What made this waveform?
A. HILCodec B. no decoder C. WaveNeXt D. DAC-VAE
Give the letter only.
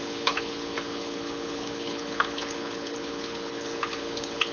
A